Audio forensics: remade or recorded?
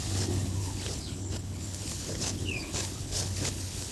remade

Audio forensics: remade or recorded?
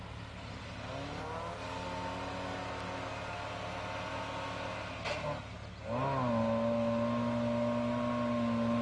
recorded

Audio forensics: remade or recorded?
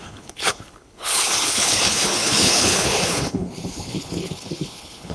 remade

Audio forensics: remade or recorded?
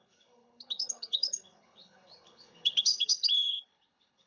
remade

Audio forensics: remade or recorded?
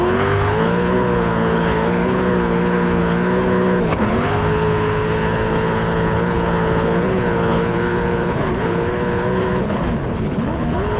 remade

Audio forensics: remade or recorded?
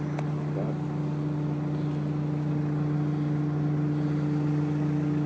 recorded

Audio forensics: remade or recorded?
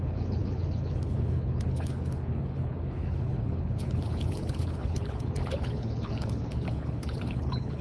remade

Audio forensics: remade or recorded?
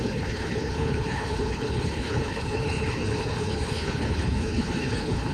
remade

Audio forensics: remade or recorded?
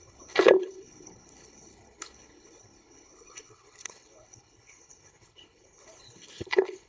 remade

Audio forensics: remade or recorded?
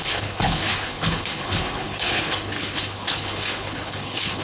remade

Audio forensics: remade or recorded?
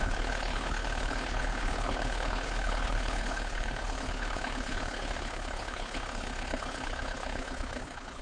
remade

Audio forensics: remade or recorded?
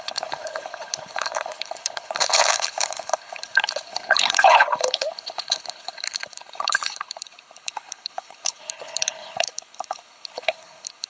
remade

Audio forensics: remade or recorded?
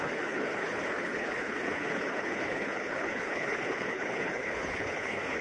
remade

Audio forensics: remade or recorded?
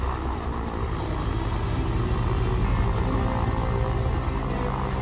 recorded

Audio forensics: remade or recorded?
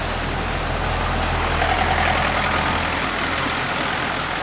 recorded